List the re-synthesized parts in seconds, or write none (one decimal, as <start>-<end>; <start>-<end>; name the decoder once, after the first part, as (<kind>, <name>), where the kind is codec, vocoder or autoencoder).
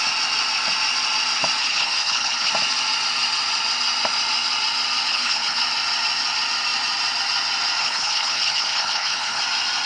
1.6-2.5 (codec, HILCodec); 5.1-5.6; 7.8-9.4